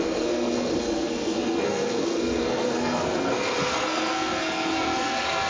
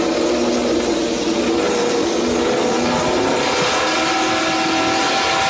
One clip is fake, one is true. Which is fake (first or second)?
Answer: first